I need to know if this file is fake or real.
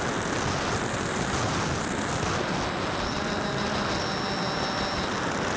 real